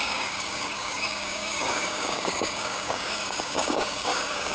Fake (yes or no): yes